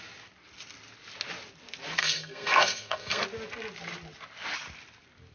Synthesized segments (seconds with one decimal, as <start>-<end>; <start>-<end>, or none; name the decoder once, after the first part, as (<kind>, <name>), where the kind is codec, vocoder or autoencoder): 2.0-3.2 (codec, SNAC)

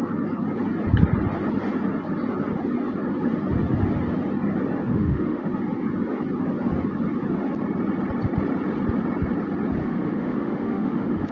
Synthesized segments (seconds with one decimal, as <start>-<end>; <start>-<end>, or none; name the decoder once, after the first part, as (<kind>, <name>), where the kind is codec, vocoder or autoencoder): 4.9-5.5 (autoencoder, DAC-VAE); 9.8-11.3

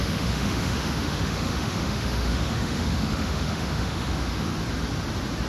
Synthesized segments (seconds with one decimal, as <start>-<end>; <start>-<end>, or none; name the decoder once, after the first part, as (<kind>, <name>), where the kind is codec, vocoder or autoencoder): 0.0-4.5 (autoencoder, DAC-VAE)

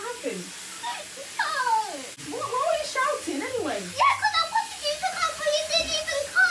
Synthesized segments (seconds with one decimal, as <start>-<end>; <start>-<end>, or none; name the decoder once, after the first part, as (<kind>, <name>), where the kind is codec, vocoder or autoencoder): 1.2-3.8 (vocoder, BigVGAN v2); 5.0-6.0

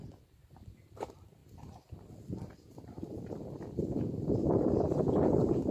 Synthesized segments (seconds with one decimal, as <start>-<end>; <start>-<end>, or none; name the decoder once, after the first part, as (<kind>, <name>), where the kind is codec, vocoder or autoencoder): none